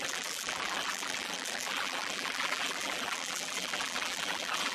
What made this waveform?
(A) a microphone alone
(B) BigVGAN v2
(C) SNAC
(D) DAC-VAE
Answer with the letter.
B